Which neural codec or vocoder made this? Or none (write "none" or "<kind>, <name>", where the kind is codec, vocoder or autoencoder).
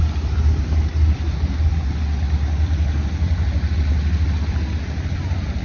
none